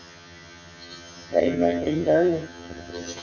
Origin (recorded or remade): remade